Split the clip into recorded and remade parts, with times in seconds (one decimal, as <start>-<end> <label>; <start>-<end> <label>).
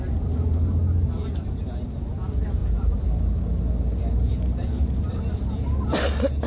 0.0-2.6 recorded; 2.6-3.1 remade; 3.1-6.5 recorded